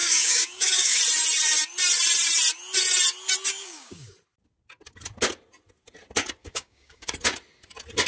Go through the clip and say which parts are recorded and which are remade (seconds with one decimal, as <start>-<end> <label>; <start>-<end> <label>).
0.0-1.0 remade; 1.0-3.5 recorded; 3.5-4.1 remade; 4.1-6.4 recorded; 6.4-7.1 remade; 7.1-8.1 recorded